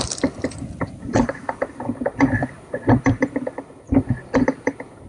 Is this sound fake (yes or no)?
no